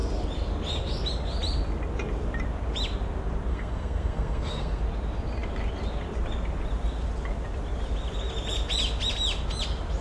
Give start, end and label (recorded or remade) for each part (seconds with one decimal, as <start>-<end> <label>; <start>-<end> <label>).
0.0-3.5 recorded; 3.5-4.8 remade; 4.8-10.0 recorded